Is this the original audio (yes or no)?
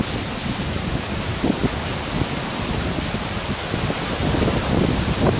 yes